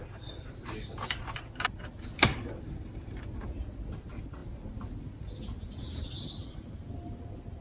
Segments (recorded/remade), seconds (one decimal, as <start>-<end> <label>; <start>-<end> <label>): 0.0-7.6 recorded